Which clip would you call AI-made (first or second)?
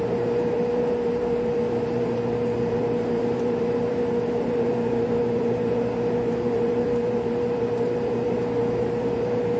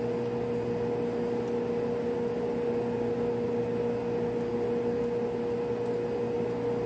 first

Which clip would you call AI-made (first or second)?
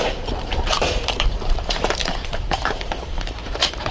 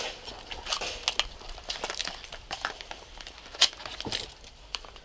first